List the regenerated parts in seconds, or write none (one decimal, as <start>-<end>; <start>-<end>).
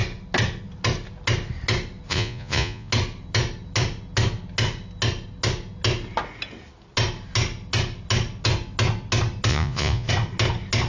2.1-2.9; 9.5-10.1